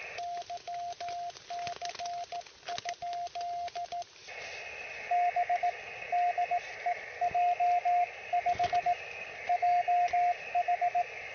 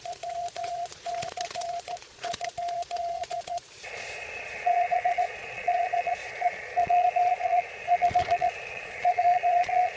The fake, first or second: second